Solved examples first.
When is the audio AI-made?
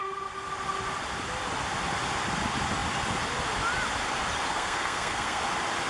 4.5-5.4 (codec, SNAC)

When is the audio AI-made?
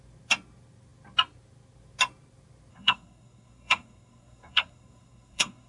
2.7-5.7 (codec, SNAC)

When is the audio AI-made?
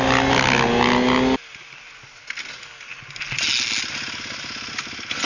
none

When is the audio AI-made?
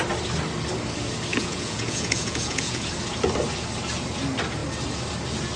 1.3-2.9 (vocoder, Vocos)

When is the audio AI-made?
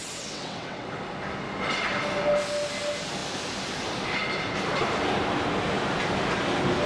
0.0-0.9 (vocoder, WaveNeXt)